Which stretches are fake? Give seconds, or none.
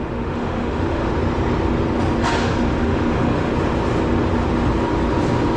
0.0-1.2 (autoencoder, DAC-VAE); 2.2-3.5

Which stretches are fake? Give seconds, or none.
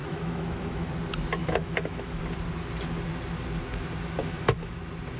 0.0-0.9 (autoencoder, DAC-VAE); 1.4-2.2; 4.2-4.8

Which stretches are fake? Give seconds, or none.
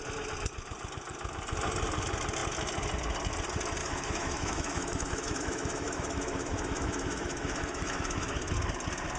3.8-8.5 (autoencoder, DAC-VAE)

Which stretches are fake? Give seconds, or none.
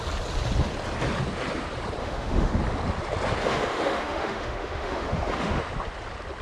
2.0-2.6 (autoencoder, DAC-VAE); 3.4-5.6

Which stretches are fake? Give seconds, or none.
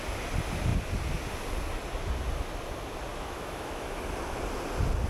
3.1-4.0 (autoencoder, DAC-VAE)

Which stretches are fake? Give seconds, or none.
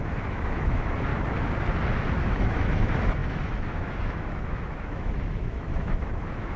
0.0-1.1 (autoencoder, DAC-VAE); 2.3-6.6